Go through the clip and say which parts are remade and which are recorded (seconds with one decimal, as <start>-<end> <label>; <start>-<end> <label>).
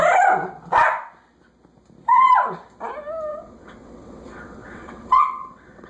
0.0-3.3 recorded; 3.3-5.9 remade